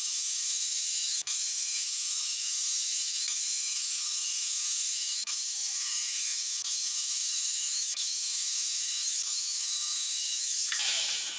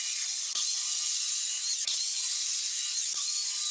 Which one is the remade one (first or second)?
first